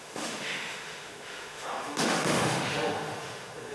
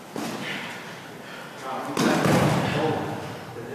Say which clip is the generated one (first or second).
first